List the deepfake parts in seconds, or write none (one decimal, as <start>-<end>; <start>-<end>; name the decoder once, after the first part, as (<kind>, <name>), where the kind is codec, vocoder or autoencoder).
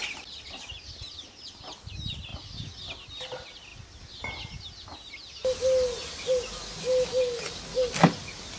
none